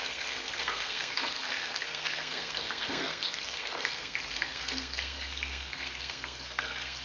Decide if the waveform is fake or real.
fake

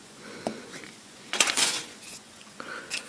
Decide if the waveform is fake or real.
fake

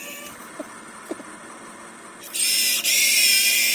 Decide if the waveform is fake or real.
real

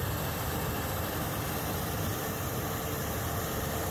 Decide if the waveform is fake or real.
fake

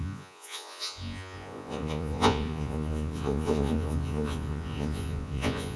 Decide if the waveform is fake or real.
fake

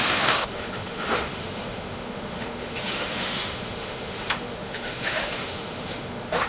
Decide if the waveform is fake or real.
fake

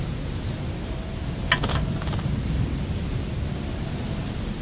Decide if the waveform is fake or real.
real